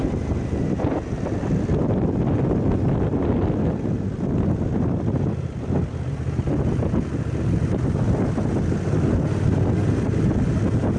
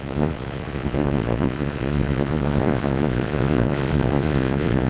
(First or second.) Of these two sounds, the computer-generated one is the second